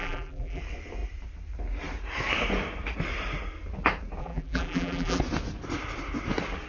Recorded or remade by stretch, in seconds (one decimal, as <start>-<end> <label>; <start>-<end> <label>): 0.0-0.6 remade; 0.6-4.2 recorded; 4.2-5.2 remade; 5.2-6.7 recorded